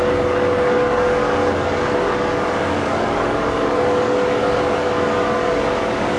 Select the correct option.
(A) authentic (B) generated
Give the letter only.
B